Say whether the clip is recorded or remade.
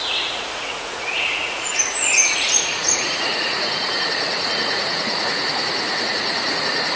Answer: remade